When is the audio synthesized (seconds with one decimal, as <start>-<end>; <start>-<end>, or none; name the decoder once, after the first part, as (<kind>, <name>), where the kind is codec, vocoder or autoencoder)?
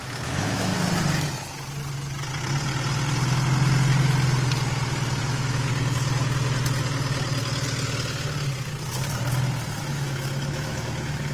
0.0-0.7 (autoencoder, DAC-VAE); 5.2-5.7; 9.8-11.3